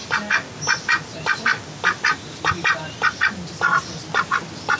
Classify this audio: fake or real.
real